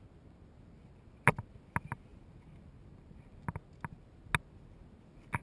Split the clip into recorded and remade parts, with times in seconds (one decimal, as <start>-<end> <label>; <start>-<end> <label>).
0.0-5.4 recorded